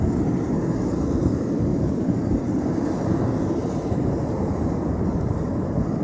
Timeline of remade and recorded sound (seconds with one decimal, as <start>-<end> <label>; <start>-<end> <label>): 0.0-1.7 recorded; 1.7-2.5 remade; 2.5-3.6 recorded; 3.6-4.6 remade; 4.6-6.0 recorded